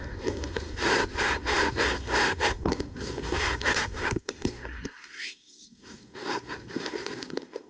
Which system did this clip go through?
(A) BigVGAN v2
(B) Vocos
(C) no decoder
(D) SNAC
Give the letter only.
D